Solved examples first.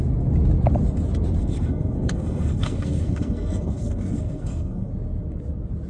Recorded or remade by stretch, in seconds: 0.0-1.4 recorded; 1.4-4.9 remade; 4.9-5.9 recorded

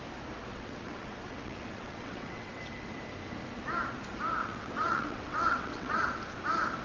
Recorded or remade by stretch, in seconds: 0.0-0.5 recorded; 0.5-2.6 remade; 2.6-4.4 recorded; 4.4-6.0 remade; 6.0-6.8 recorded

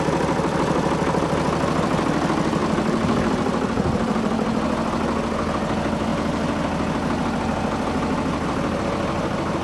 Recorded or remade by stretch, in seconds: 0.0-2.6 recorded; 2.6-3.3 remade; 3.3-9.6 recorded